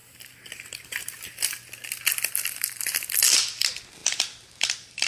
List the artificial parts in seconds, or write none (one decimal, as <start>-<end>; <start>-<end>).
none